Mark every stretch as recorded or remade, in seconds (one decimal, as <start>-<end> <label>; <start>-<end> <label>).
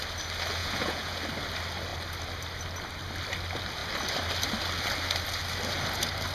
0.0-0.6 recorded; 0.6-1.2 remade; 1.2-6.3 recorded